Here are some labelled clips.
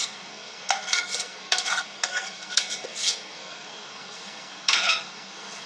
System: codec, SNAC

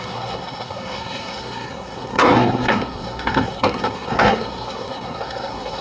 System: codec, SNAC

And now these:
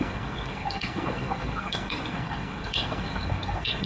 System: codec, SNAC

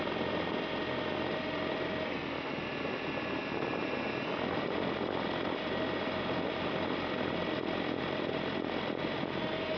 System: none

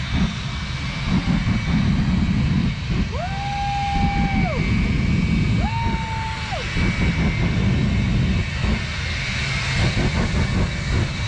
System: none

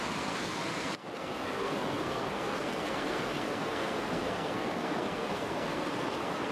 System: codec, SNAC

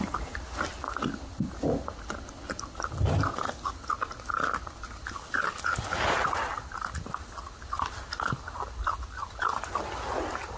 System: none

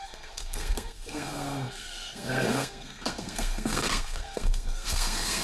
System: codec, SNAC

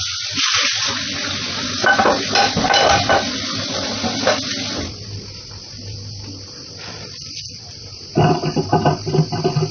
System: none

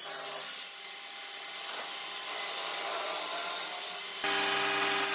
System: none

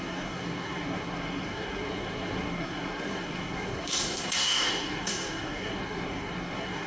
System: codec, SNAC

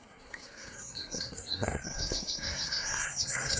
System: codec, SNAC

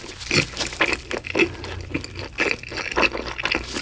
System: none